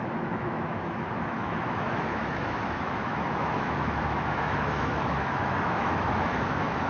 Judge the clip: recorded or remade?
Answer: remade